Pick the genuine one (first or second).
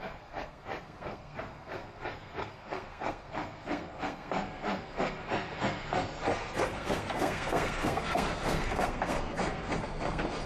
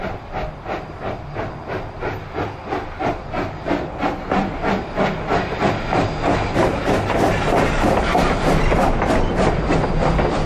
second